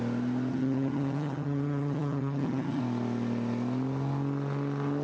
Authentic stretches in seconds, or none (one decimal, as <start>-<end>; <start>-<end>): 0.0-0.5; 2.8-5.0